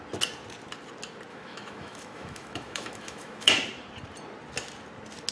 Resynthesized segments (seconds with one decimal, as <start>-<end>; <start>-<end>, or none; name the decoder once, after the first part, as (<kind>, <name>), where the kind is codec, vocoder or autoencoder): 1.3-3.5 (autoencoder, DAC-VAE)